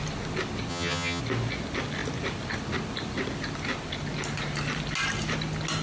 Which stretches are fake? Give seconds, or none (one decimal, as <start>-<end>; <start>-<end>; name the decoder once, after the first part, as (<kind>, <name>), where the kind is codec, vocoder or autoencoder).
0.7-1.2 (vocoder, HiFi-GAN)